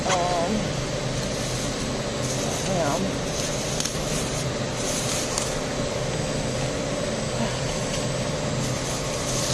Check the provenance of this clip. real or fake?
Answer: real